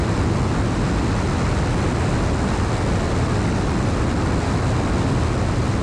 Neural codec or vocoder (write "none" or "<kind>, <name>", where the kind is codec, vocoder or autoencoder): none